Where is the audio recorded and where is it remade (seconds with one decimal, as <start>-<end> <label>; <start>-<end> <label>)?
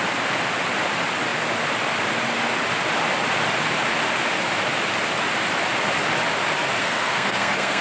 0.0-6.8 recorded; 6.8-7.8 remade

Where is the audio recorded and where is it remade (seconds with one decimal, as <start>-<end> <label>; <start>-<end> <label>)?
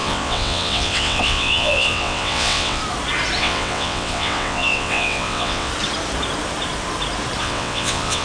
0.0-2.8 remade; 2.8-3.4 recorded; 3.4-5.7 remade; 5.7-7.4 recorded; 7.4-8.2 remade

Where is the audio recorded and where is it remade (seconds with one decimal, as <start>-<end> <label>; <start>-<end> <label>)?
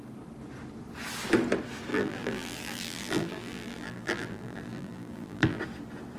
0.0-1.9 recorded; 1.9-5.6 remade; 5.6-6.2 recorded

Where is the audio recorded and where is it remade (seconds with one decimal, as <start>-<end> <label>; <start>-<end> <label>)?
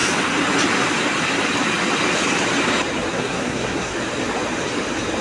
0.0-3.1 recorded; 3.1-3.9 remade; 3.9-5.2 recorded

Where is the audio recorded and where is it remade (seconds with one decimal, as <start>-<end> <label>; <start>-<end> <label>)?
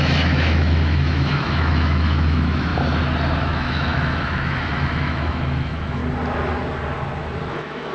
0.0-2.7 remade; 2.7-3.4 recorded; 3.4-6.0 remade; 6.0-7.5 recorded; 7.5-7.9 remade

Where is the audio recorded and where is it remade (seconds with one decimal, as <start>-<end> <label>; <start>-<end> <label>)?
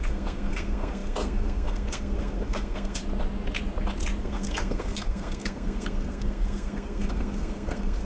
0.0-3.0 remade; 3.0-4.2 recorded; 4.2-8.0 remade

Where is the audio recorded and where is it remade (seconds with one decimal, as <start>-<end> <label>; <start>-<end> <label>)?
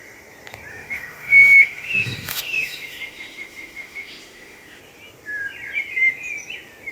0.0-0.7 recorded; 0.7-4.8 remade; 4.8-6.9 recorded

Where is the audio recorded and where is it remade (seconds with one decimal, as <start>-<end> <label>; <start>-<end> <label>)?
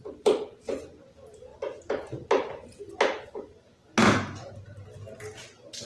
0.0-5.8 recorded